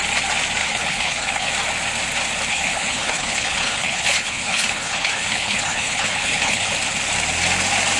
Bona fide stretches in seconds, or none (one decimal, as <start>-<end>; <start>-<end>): 0.0-0.6; 1.5-2.5; 6.7-8.0